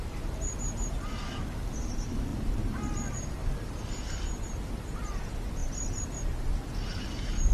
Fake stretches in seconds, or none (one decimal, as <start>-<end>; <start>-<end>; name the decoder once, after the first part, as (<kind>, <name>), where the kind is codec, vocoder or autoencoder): none